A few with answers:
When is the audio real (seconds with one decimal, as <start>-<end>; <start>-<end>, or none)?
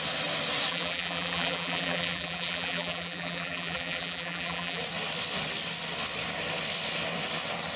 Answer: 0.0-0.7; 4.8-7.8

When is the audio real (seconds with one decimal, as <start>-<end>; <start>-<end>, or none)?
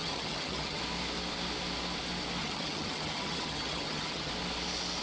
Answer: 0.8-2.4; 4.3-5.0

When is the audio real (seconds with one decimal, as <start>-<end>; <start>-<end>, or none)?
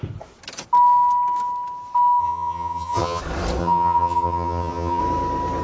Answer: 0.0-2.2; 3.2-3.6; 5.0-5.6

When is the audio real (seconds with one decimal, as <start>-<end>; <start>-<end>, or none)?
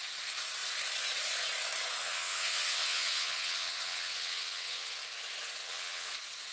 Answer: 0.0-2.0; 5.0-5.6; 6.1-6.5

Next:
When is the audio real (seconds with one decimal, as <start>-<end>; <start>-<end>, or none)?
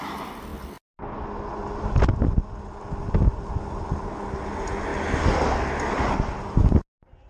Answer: 0.0-7.3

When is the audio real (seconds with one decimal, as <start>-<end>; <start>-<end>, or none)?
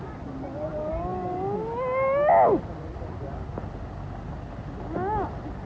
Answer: 0.0-5.7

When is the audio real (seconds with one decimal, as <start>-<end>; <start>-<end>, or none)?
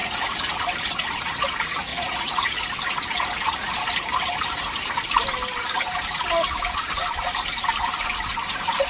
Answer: 0.6-1.9; 2.6-8.9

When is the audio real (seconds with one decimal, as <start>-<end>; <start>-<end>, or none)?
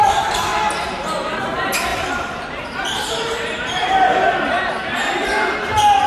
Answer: 0.5-1.4